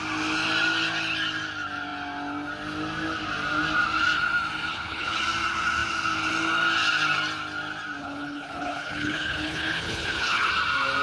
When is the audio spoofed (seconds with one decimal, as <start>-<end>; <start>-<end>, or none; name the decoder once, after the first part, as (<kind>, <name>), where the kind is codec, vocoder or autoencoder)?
4.7-5.2 (codec, HILCodec); 8.0-10.5

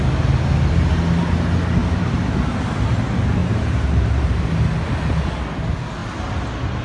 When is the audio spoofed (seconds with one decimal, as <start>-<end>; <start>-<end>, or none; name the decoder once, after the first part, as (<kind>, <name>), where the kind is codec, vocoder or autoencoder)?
1.8-2.8 (vocoder, BigVGAN v2); 3.4-4.5

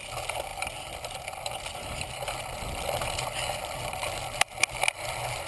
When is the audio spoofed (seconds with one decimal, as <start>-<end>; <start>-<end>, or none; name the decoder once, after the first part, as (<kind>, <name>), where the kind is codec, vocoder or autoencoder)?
none